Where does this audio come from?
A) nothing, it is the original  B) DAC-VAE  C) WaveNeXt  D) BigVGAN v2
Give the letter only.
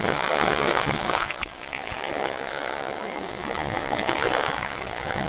C